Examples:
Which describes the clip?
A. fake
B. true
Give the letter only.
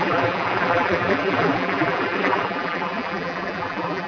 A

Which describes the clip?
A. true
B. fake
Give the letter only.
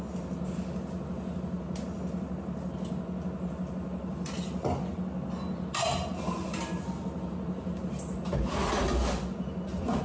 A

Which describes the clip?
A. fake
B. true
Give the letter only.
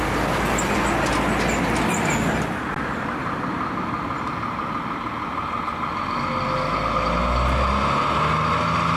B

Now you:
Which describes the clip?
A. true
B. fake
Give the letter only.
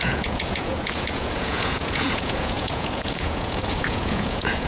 B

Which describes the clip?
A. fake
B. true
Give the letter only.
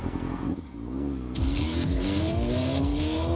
A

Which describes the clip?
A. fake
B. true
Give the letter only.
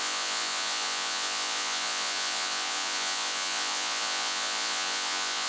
A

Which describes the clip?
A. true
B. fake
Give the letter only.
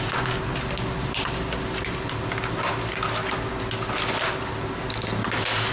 A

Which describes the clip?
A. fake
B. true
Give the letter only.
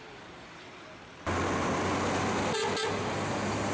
B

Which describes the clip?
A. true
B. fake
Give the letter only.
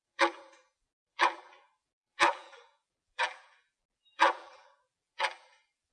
B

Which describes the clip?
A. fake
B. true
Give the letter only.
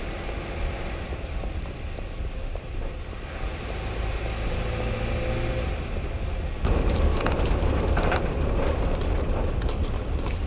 B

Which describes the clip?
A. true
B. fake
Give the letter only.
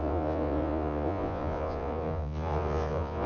B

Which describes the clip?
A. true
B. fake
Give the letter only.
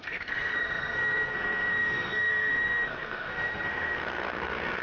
B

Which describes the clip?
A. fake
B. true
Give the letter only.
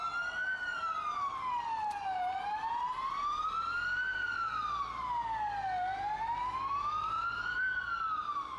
B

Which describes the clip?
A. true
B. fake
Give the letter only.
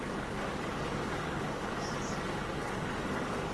B